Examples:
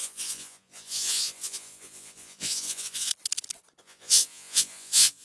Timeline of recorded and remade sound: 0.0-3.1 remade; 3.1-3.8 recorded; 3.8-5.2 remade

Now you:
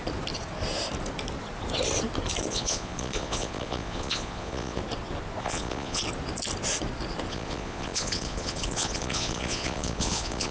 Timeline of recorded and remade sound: 0.0-2.5 recorded; 2.5-4.8 remade; 4.8-5.4 recorded; 5.4-6.0 remade; 6.0-7.3 recorded; 7.3-10.5 remade

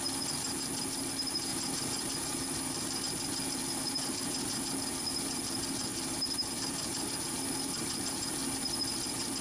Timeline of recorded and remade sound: 0.0-1.5 recorded; 1.5-3.0 remade; 3.0-3.8 recorded; 3.8-4.6 remade; 4.6-5.9 recorded; 5.9-7.1 remade; 7.1-9.4 recorded

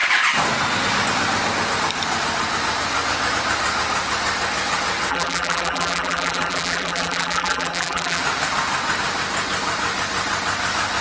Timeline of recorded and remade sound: 0.0-5.1 recorded; 5.1-8.2 remade; 8.2-11.0 recorded

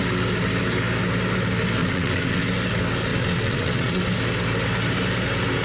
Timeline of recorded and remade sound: 0.0-1.8 recorded; 1.8-2.4 remade; 2.4-3.1 recorded; 3.1-4.0 remade; 4.0-5.6 recorded

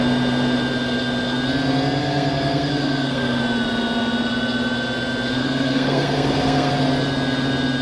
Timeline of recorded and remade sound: 0.0-2.0 recorded; 2.0-3.4 remade; 3.4-5.4 recorded; 5.4-6.7 remade; 6.7-7.8 recorded

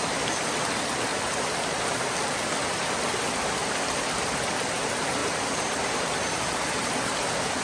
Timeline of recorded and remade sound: 0.0-1.1 recorded; 1.1-2.0 remade; 2.0-5.2 recorded; 5.2-7.6 remade

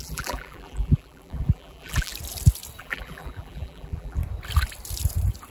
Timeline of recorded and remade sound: 0.0-2.1 remade; 2.1-2.8 recorded; 2.8-4.2 remade; 4.2-5.5 recorded